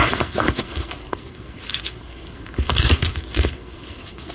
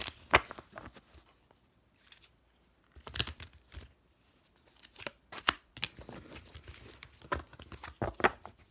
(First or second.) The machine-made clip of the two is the first